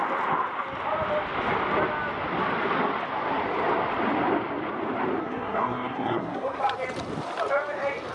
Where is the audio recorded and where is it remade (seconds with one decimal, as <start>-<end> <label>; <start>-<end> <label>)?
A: 0.0-5.2 recorded; 5.2-6.6 remade; 6.6-8.1 recorded